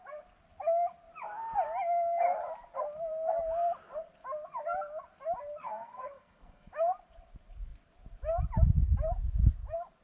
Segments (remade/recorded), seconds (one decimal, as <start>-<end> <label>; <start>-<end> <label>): 0.0-5.6 recorded; 5.6-6.7 remade; 6.7-10.0 recorded